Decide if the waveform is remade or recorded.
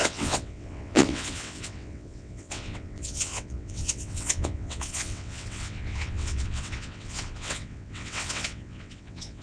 remade